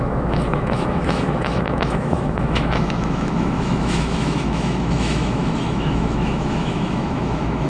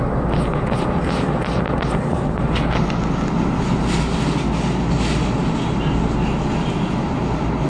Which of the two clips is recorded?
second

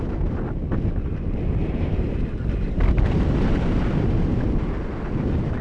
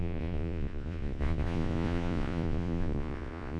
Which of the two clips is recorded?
first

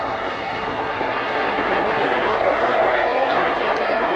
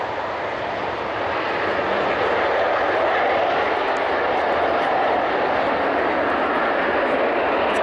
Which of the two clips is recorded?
second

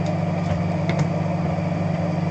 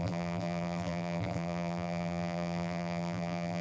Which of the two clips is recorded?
first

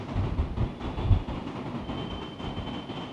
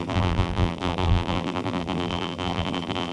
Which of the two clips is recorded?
first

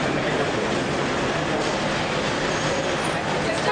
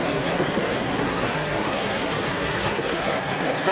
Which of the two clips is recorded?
first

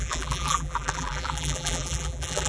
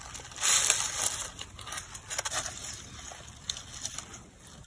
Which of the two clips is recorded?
second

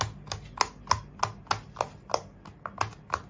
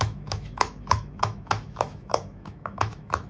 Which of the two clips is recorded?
first